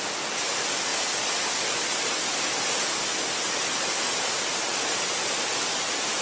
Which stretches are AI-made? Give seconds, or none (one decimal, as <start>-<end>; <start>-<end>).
none